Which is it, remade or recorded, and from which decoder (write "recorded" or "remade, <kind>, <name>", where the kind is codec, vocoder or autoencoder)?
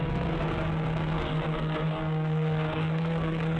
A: remade, codec, SNAC